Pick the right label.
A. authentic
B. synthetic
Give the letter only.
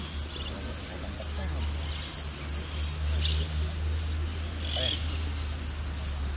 A